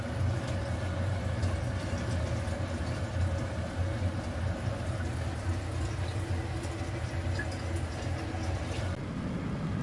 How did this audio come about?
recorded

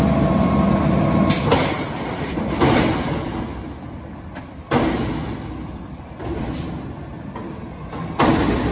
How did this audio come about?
recorded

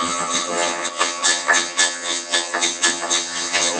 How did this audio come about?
remade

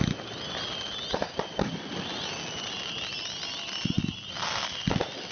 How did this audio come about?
recorded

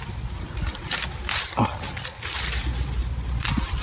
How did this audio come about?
recorded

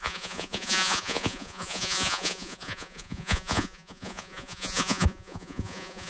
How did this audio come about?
remade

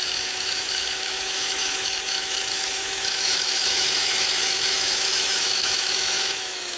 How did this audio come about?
remade